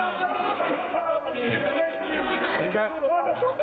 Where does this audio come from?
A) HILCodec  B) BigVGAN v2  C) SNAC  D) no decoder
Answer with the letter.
C